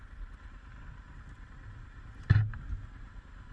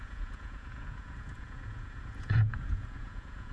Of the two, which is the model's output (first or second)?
second